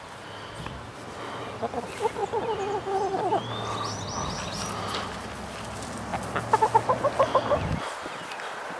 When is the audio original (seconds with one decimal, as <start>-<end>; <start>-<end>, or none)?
0.0-8.8